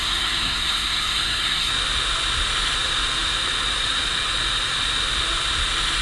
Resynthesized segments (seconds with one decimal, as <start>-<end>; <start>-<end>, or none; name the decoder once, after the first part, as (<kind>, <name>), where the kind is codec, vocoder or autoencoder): 0.0-1.7 (codec, SNAC)